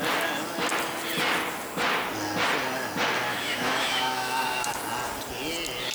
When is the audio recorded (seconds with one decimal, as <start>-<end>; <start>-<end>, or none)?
0.0-3.3; 4.8-5.9

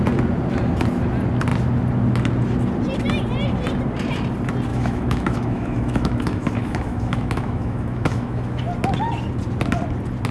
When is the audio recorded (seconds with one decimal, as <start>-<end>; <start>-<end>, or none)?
0.0-4.7; 8.6-10.3

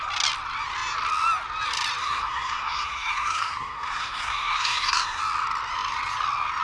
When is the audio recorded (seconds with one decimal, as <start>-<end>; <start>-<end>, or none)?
0.0-2.0; 5.2-6.6